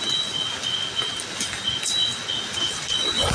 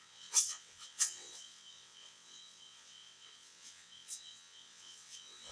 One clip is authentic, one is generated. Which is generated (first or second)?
second